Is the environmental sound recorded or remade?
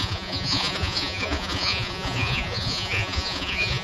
remade